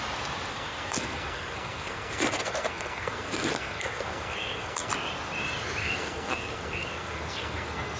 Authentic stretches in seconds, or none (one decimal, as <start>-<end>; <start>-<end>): 0.0-0.5; 4.9-5.8